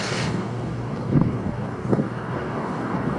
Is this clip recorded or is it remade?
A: remade